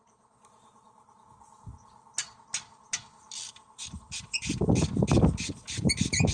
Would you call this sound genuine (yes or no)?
yes